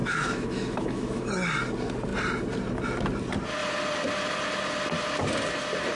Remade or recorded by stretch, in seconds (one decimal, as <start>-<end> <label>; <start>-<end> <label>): 0.0-1.3 remade; 1.3-5.9 recorded